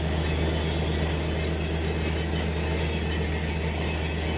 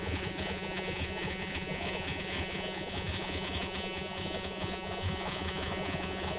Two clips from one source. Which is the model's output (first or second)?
second